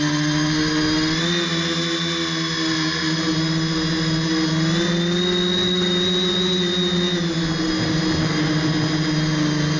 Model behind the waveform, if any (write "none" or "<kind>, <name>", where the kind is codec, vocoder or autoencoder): none